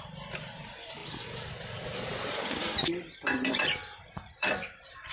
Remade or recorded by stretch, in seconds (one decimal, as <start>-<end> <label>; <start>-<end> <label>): 0.0-3.8 remade; 3.8-4.4 recorded; 4.4-5.1 remade